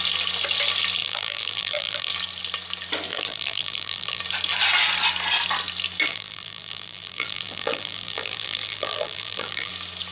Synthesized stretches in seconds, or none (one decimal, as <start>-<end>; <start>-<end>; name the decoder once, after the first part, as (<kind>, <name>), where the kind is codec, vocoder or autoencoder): 1.0-2.1 (vocoder, BigVGAN v2); 3.1-4.2; 6.1-9.7